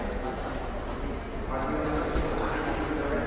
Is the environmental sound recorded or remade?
recorded